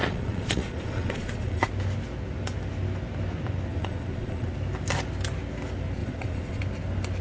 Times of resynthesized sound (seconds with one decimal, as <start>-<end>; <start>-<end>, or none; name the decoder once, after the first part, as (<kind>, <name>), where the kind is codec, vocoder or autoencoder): 0.0-1.7 (vocoder, Vocos); 3.7-4.5; 6.0-6.6